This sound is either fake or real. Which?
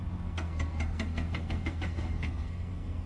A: fake